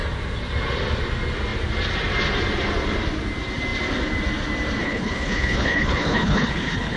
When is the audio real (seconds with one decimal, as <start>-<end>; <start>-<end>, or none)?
0.0-4.8

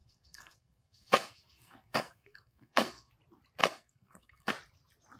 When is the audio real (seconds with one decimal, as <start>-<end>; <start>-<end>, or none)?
3.1-3.6; 4.5-5.2